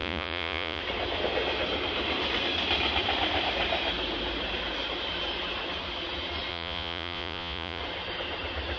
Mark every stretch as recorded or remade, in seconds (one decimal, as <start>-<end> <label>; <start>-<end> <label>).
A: 0.0-0.8 remade; 0.8-6.5 recorded; 6.5-7.8 remade; 7.8-8.8 recorded